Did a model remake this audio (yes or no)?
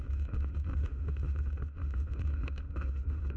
yes